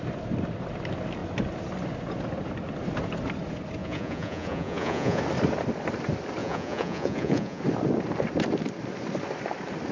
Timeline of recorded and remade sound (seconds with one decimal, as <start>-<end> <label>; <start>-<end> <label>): 0.0-3.8 recorded; 3.8-5.2 remade; 5.2-6.4 recorded; 6.4-7.6 remade; 7.6-9.9 recorded